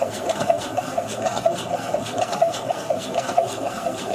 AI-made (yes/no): yes